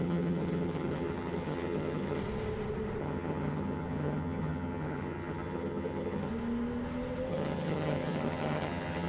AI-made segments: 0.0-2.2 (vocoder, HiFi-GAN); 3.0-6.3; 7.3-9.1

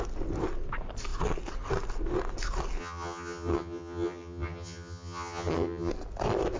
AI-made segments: 2.8-5.9 (vocoder, HiFi-GAN)

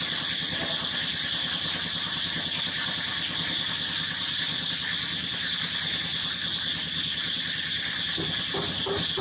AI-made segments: none